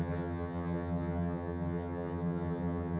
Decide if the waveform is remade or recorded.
remade